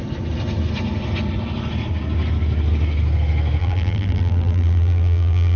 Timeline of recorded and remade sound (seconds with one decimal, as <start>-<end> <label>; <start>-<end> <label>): 0.0-3.6 recorded; 3.6-5.6 remade